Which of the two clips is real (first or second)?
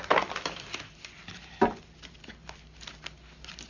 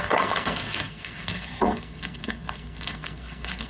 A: first